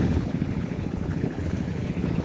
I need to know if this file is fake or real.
fake